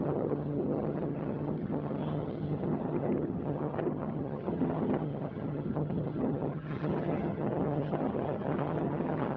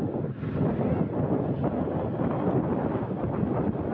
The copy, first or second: first